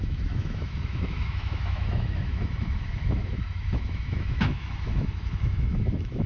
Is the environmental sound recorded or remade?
remade